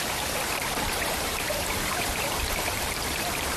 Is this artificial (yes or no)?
yes